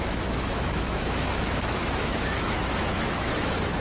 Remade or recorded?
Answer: remade